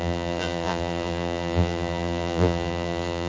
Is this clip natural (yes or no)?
no